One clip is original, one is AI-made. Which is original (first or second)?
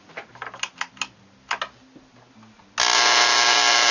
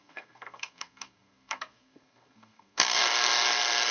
first